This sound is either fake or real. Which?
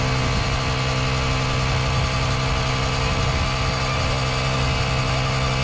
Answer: real